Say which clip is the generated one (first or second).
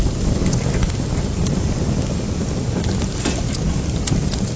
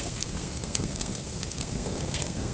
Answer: second